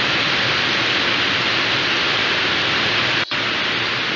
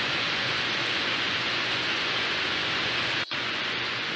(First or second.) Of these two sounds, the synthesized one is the second